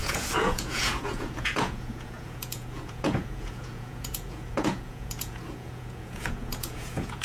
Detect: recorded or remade remade